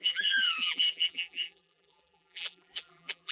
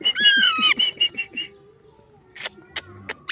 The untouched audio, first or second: second